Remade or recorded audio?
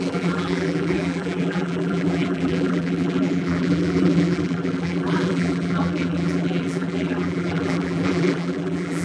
remade